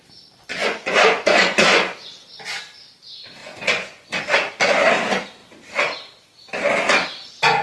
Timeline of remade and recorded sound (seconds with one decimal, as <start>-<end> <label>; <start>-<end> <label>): 0.0-0.5 recorded; 0.5-2.4 remade; 2.4-3.4 recorded; 3.4-4.2 remade; 4.2-7.6 recorded